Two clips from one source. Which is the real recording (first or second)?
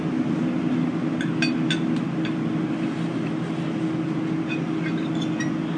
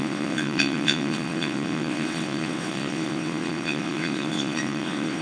first